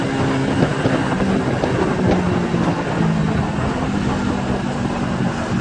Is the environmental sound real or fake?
real